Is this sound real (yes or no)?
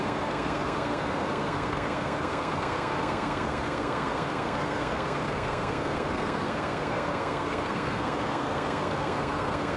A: no